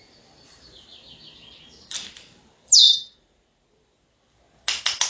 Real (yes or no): yes